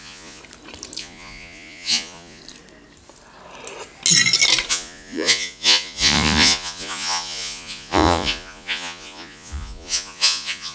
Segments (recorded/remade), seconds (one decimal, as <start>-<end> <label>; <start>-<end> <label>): 0.0-0.4 remade; 0.4-1.0 recorded; 1.0-2.4 remade; 2.4-4.7 recorded; 4.7-10.7 remade